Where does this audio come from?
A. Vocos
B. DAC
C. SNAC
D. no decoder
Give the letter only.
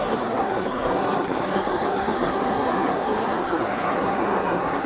C